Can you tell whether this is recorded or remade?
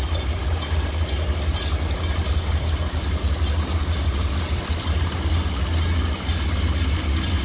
recorded